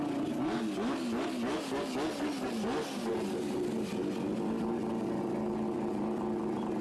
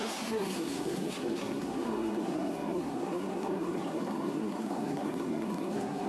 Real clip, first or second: first